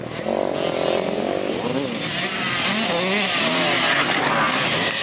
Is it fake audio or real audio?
real